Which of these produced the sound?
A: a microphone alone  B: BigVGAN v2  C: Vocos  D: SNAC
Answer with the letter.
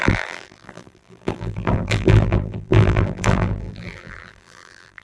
B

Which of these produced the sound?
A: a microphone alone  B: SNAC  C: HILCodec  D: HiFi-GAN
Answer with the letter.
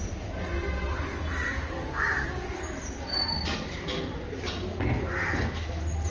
A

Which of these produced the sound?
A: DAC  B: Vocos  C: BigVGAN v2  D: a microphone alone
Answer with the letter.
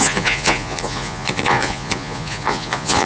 B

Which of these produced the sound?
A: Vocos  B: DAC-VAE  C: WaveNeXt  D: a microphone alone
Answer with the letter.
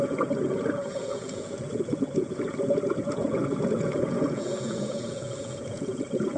A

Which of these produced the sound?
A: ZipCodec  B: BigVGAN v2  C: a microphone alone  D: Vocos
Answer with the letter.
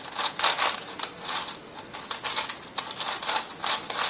C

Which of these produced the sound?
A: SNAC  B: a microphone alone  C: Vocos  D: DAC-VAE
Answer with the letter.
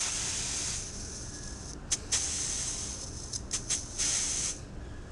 B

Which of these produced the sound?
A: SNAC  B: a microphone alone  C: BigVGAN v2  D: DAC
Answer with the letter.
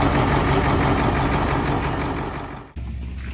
B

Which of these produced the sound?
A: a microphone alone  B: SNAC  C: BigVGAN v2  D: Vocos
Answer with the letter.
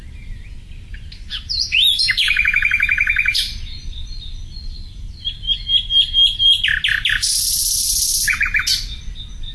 A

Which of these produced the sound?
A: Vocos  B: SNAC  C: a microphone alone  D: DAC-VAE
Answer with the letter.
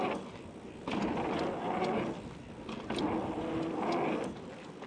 C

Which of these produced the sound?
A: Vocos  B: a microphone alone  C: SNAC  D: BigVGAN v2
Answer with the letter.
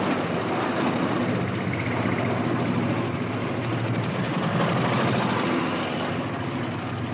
B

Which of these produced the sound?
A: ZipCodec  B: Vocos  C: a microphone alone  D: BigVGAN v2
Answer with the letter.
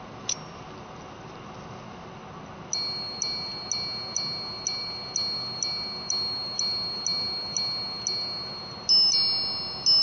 C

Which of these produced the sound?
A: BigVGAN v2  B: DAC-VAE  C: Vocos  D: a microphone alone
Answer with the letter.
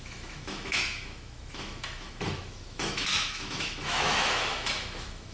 B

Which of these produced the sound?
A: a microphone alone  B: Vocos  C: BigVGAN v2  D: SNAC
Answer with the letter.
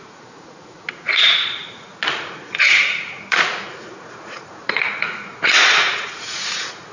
B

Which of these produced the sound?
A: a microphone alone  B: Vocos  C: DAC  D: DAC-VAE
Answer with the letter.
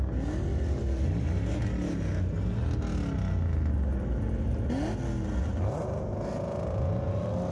A